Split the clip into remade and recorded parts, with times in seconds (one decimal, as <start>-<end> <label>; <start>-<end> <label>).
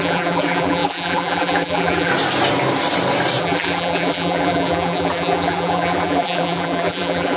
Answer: 0.0-2.1 remade; 2.1-3.4 recorded; 3.4-7.4 remade